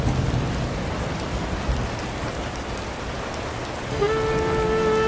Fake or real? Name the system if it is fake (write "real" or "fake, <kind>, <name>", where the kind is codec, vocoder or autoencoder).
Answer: real